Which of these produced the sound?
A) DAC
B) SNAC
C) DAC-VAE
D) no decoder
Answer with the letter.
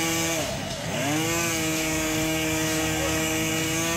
A